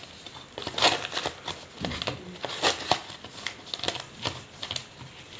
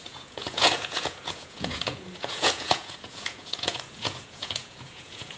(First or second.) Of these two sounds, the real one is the first